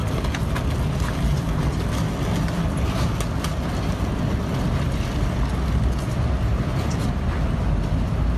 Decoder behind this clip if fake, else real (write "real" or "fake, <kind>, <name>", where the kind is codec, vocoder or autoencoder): real